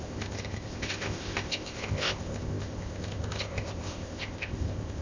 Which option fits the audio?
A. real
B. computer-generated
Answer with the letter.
B